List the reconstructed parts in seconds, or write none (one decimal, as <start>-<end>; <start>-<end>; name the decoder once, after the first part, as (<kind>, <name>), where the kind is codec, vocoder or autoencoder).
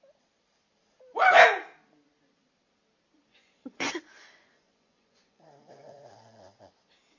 3.3-6.0 (vocoder, Vocos)